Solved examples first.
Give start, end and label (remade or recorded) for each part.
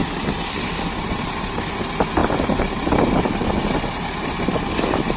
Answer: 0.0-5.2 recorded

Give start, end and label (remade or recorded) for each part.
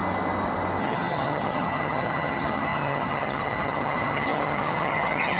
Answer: 0.0-0.8 recorded; 0.8-5.4 remade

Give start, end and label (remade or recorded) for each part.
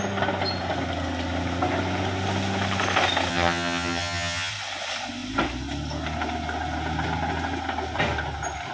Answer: 0.0-3.3 recorded; 3.3-4.5 remade; 4.5-8.7 recorded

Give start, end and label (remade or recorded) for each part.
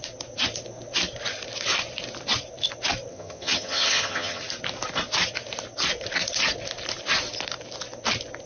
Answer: 0.0-3.1 recorded; 3.1-4.4 remade; 4.4-8.5 recorded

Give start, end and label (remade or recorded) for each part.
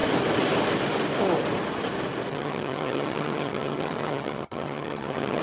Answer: 0.0-2.3 recorded; 2.3-5.4 remade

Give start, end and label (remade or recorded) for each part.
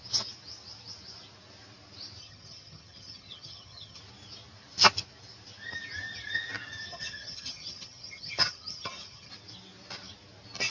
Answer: 0.0-2.2 recorded; 2.2-4.0 remade; 4.0-6.9 recorded; 6.9-9.3 remade; 9.3-10.7 recorded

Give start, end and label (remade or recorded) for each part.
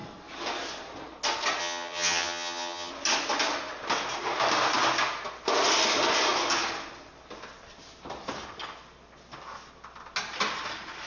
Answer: 0.0-1.6 recorded; 1.6-2.9 remade; 2.9-11.1 recorded